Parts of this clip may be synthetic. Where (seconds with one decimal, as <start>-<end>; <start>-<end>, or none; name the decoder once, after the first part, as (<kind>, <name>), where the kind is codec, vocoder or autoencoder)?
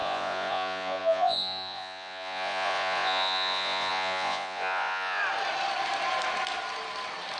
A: 0.0-5.2 (vocoder, Vocos)